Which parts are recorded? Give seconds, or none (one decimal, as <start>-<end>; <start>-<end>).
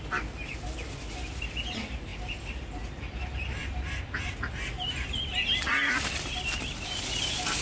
0.0-7.6